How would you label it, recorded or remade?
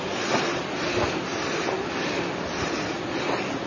recorded